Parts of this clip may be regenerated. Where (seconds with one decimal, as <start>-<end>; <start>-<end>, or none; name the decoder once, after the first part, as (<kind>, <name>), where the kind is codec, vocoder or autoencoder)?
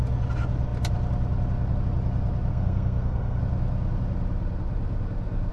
2.5-3.4 (codec, SNAC)